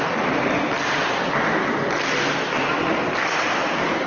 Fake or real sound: real